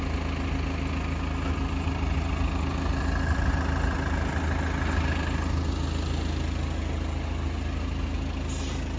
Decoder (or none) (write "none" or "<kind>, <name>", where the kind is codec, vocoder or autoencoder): none